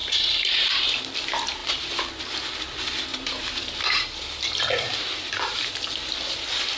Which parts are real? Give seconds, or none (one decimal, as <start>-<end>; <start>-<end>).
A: 1.1-1.6; 2.2-3.1; 5.2-6.8

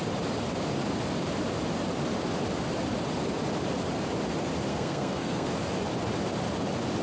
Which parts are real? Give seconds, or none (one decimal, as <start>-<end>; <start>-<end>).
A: 0.0-4.7; 5.5-7.0

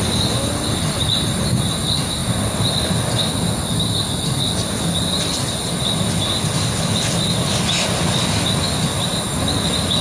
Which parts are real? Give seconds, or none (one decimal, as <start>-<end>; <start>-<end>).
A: 0.0-10.0

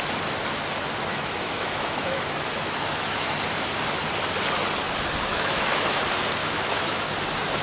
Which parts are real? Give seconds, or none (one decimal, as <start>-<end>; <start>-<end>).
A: 0.0-1.1; 3.3-5.3; 6.0-6.4; 7.0-7.6

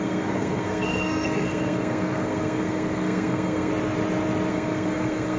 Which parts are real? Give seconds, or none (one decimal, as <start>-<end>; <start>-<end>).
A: 3.7-4.5

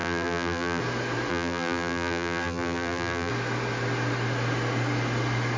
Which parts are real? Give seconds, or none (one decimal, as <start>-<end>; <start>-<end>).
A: 0.8-1.3; 3.3-5.6